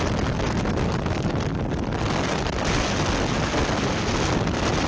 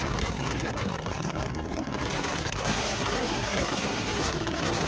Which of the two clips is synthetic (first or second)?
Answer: second